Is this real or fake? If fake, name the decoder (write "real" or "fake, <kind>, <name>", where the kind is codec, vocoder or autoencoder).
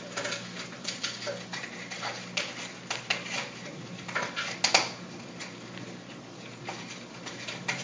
real